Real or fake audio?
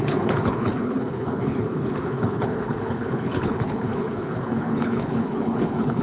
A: fake